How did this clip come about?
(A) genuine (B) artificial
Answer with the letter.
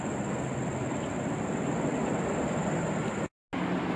A